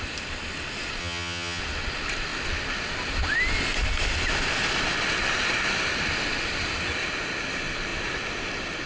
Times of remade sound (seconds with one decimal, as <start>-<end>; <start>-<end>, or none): 1.0-1.6